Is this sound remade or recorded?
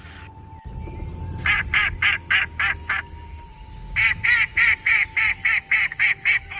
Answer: recorded